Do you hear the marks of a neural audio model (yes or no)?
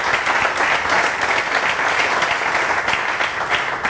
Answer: no